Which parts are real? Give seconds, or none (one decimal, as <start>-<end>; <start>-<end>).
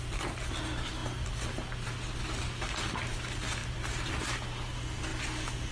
0.0-3.6; 4.1-5.7